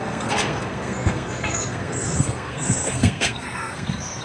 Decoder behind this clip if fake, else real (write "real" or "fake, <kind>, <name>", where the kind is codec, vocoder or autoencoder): fake, codec, SNAC